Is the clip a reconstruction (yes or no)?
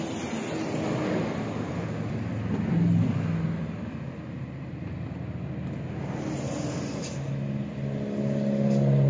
no